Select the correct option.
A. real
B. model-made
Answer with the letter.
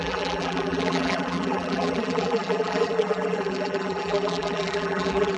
B